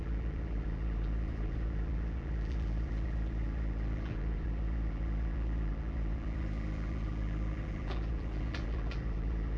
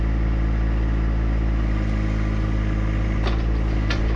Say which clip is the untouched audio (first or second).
second